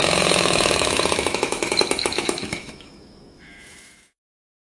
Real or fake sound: fake